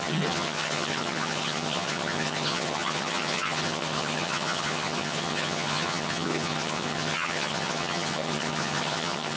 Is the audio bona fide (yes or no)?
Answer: no